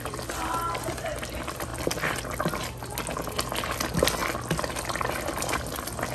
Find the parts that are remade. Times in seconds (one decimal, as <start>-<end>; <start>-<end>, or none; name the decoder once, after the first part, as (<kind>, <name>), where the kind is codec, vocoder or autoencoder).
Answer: none